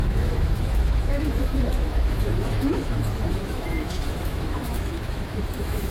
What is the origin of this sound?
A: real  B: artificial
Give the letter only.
B